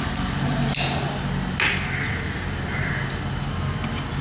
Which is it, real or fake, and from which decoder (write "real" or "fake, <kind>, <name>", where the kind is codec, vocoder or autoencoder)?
real